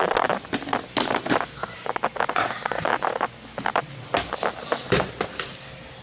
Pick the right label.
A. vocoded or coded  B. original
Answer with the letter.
B